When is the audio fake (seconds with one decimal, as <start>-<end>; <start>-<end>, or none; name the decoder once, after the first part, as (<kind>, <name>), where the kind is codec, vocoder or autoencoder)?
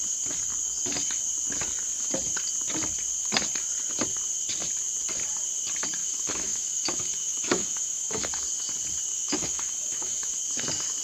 6.0-8.3 (autoencoder, DAC-VAE); 9.1-10.4